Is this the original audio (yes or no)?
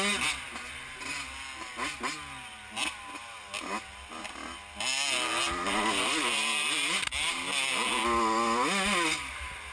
yes